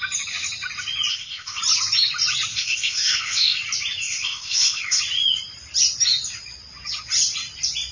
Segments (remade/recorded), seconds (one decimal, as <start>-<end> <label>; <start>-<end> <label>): 0.0-1.1 recorded; 1.1-1.6 remade; 1.6-2.5 recorded; 2.5-3.6 remade; 3.6-4.0 recorded; 4.0-5.0 remade; 5.0-7.9 recorded